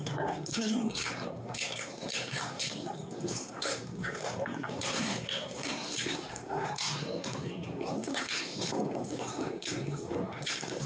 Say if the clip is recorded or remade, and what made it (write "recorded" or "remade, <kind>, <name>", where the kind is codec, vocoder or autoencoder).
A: remade, codec, SNAC